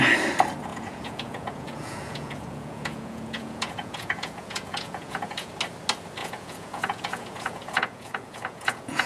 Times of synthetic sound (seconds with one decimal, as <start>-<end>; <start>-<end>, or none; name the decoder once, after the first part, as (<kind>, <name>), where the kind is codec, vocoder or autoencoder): 0.7-5.5 (vocoder, Vocos); 6.2-9.1